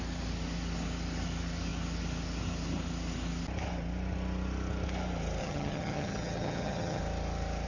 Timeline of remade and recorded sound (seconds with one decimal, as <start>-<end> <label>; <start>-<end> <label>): 0.0-5.4 recorded; 5.4-7.0 remade; 7.0-7.7 recorded